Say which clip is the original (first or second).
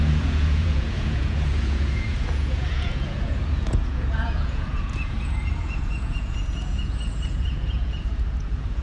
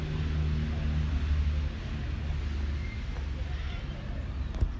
second